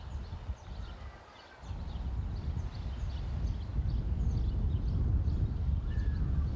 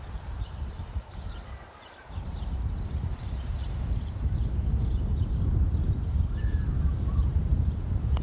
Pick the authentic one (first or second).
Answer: first